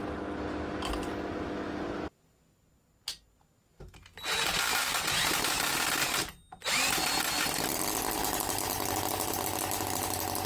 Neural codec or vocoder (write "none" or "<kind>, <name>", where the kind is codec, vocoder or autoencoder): none